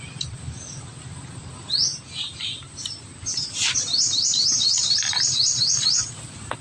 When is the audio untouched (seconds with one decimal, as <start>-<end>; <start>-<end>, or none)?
0.0-1.9; 5.9-6.6